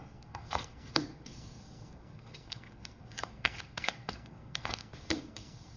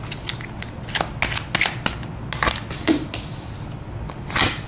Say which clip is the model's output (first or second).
first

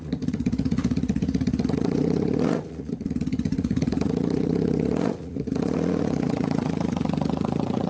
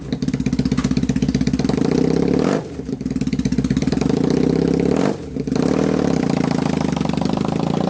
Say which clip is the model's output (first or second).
first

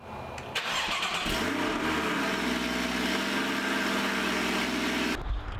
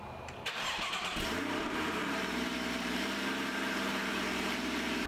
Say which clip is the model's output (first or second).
second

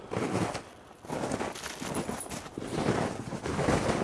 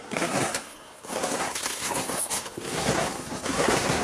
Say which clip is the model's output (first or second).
second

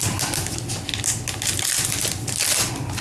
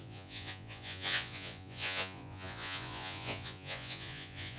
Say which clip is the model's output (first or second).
second